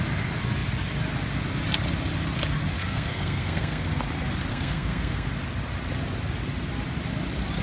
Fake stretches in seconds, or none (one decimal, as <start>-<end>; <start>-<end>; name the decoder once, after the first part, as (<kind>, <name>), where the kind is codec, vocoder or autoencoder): 2.8-3.8 (codec, SNAC); 4.5-5.3